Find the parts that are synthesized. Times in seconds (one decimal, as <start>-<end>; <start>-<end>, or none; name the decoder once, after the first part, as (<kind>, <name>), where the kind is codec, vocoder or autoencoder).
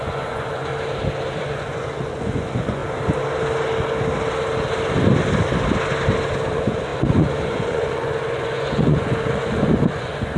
0.0-0.7 (vocoder, Vocos); 1.4-2.8; 6.5-10.4